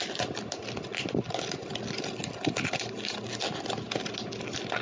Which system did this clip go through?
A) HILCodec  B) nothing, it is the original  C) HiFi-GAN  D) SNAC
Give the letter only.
B